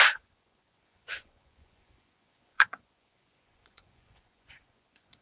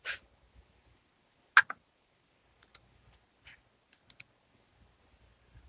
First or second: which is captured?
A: second